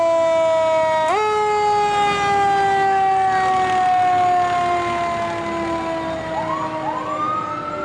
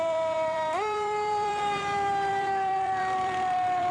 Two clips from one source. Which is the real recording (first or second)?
first